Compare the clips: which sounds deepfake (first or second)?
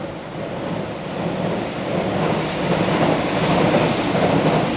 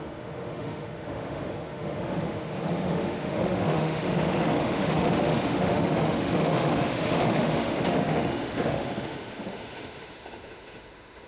second